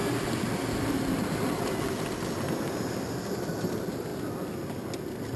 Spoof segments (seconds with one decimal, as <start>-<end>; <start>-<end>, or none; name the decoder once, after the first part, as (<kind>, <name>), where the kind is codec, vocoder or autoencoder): none